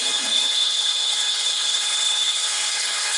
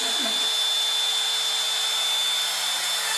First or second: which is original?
second